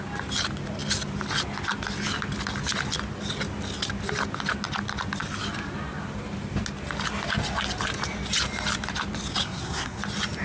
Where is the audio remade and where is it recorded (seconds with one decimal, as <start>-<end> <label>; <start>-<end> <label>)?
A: 0.0-9.4 recorded; 9.4-10.0 remade; 10.0-10.4 recorded